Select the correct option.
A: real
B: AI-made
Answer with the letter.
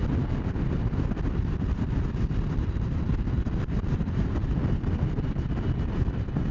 A